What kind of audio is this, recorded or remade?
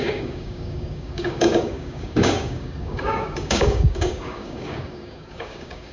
remade